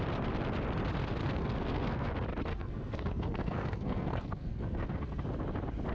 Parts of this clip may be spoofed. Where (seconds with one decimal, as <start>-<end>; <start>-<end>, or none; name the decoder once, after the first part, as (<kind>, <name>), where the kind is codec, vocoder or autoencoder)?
1.2-2.1 (codec, SNAC); 2.5-5.2